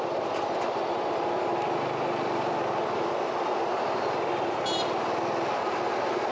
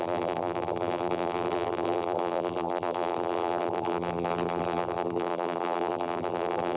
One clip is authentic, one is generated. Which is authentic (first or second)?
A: first